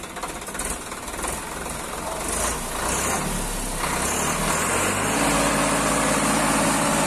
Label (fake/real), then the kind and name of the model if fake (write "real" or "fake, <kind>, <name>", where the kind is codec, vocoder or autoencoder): real